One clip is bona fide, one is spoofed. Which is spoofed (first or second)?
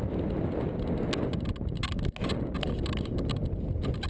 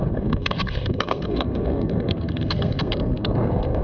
second